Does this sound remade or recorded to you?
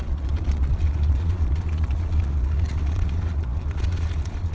remade